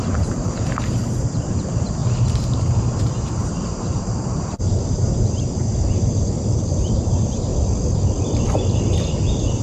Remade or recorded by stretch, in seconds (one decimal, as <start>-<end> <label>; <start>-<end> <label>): 0.0-2.0 remade; 2.0-2.5 recorded; 2.5-7.5 remade; 7.5-9.1 recorded; 9.1-9.6 remade